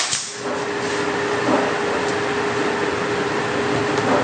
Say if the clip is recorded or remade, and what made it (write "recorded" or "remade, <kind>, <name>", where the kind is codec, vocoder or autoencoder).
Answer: recorded